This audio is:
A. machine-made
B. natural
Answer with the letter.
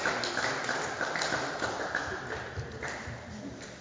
B